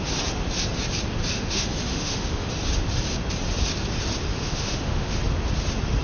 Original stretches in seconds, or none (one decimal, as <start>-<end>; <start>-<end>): 0.0-1.2; 2.5-4.3; 5.2-6.0